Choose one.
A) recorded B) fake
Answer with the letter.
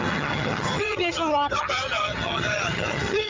B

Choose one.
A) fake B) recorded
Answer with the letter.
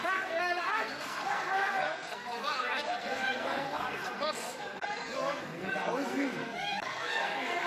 A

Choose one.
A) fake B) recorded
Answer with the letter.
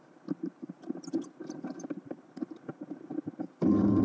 B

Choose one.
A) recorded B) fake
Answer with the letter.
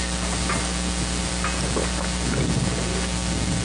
A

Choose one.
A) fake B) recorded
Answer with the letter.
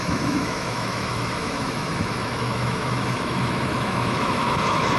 A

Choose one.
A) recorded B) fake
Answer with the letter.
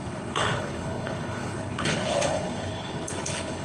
B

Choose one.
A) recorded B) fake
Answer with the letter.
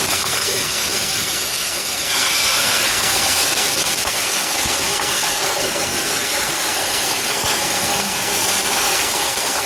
B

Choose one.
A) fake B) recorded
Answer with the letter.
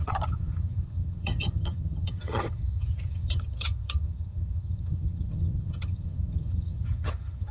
A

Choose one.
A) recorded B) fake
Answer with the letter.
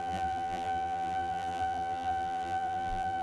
B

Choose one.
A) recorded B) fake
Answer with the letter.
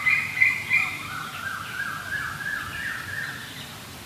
A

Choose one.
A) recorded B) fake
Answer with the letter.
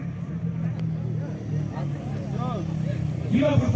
A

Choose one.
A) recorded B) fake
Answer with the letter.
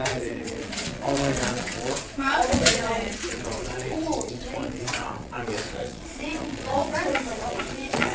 B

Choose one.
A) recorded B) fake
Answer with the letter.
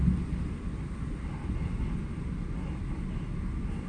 A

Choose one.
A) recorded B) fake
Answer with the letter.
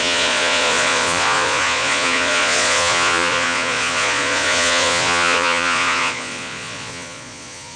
B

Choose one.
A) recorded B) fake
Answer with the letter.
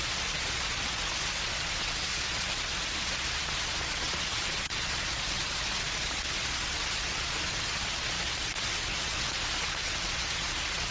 B